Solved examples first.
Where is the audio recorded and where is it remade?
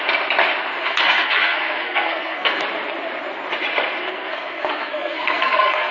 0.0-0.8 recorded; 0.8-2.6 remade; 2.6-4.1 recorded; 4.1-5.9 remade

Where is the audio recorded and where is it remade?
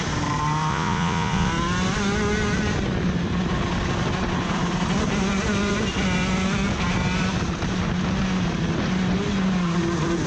0.0-0.7 recorded; 0.7-1.5 remade; 1.5-10.3 recorded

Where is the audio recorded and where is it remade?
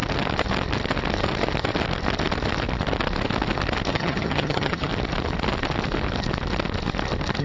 0.0-3.9 recorded; 3.9-4.9 remade; 4.9-7.4 recorded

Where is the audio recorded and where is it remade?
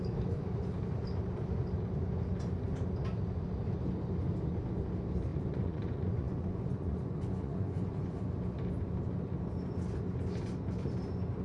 0.0-5.3 recorded; 5.3-8.2 remade; 8.2-11.4 recorded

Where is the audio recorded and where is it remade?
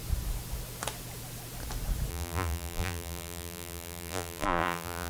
0.0-2.1 recorded; 2.1-5.1 remade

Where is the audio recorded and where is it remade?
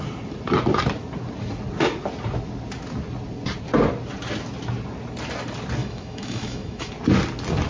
0.0-5.8 recorded; 5.8-6.9 remade; 6.9-7.7 recorded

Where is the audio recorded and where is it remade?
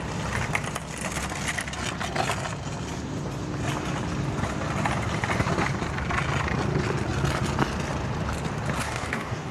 0.0-8.8 recorded; 8.8-9.5 remade